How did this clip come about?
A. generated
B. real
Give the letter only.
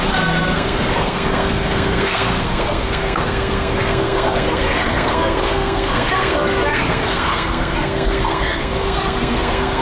A